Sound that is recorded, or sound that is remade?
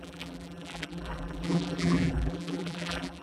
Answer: remade